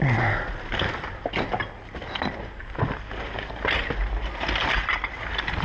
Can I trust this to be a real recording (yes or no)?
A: yes